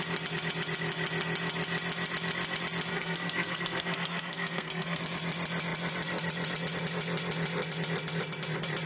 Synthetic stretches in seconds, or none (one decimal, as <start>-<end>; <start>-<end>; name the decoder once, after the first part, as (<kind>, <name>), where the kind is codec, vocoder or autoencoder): 2.9-5.0 (codec, SNAC)